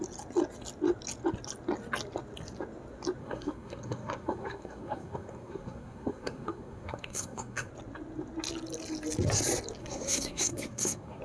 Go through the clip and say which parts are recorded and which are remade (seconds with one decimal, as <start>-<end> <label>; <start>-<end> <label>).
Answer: 0.0-3.2 recorded; 3.2-7.7 remade; 7.7-9.8 recorded; 9.8-11.2 remade

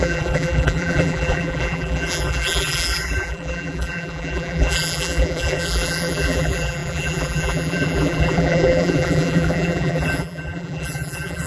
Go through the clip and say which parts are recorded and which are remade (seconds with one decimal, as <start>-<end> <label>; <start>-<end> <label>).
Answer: 0.0-11.5 remade